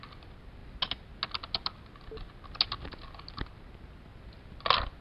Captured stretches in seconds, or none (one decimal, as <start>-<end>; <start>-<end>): 0.0-5.0